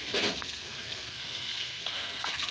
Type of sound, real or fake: fake